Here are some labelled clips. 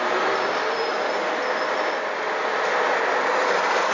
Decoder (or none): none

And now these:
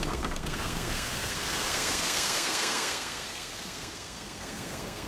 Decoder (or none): codec, SNAC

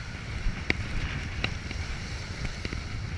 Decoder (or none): none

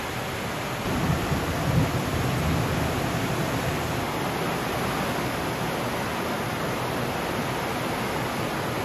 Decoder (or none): none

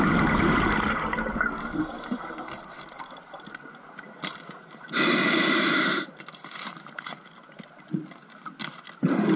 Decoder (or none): none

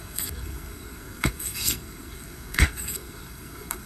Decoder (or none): codec, SNAC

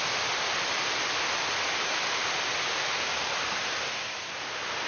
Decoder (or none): none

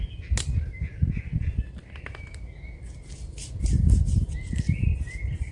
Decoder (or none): none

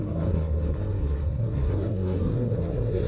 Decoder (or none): codec, SNAC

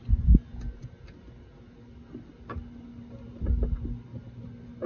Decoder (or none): none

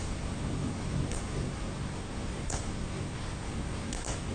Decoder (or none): codec, SNAC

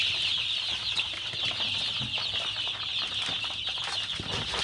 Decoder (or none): none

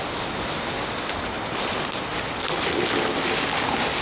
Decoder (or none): none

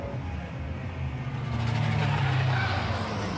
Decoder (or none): none